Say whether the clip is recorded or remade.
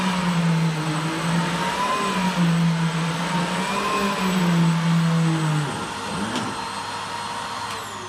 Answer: recorded